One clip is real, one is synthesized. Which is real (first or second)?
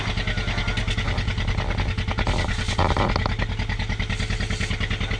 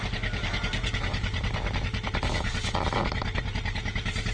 first